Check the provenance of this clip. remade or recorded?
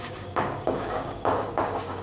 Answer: remade